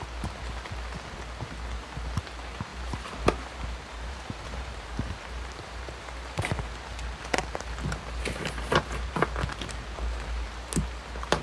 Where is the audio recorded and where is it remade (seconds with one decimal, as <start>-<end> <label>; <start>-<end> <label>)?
0.0-2.7 recorded; 2.7-6.7 remade; 6.7-11.4 recorded